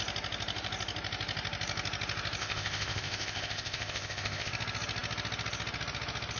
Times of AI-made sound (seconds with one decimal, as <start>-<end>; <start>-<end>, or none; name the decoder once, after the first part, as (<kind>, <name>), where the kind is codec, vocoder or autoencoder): 2.4-4.5 (codec, ZipCodec)